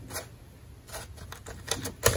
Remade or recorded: recorded